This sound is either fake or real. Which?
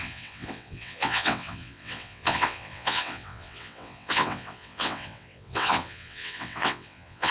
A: fake